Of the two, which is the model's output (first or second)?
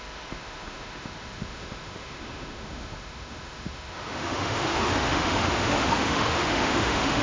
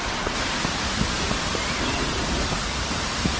first